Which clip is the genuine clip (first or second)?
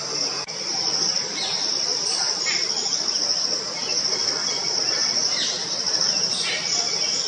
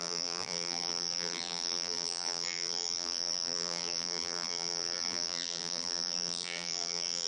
first